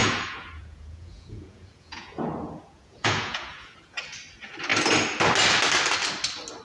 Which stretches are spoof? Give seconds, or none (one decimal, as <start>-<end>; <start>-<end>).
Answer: 0.0-4.0